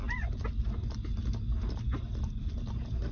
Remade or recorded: recorded